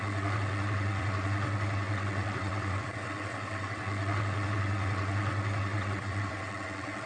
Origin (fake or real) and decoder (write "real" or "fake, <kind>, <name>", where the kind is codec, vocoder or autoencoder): fake, vocoder, WaveNeXt